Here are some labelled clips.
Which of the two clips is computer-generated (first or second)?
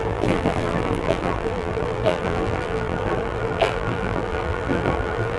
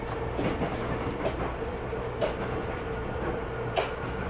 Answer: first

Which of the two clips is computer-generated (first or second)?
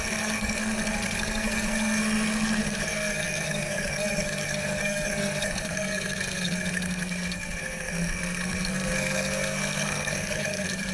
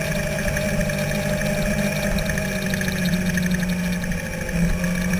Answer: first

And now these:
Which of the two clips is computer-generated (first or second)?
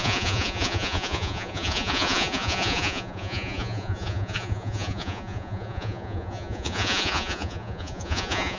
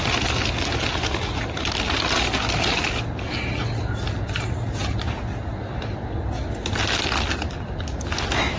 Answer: first